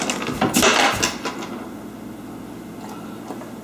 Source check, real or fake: real